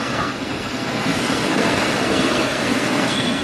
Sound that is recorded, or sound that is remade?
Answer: remade